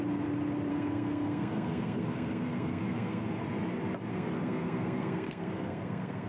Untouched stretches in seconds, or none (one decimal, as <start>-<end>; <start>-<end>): 0.0-0.7; 3.3-4.1